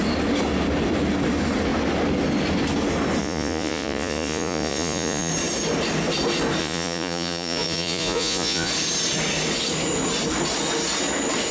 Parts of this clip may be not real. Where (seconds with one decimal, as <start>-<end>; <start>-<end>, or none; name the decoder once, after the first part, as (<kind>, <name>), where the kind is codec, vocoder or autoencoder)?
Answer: 3.2-5.3 (vocoder, Vocos); 6.6-8.7